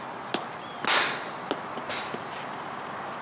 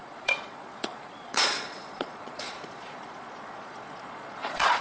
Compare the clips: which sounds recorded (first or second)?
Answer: first